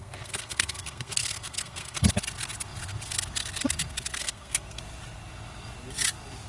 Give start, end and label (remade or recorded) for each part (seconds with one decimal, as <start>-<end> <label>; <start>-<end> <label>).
0.0-2.0 remade; 2.0-4.2 recorded; 4.2-4.8 remade; 4.8-6.5 recorded